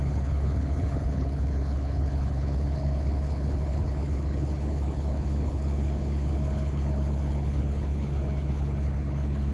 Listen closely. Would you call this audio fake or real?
fake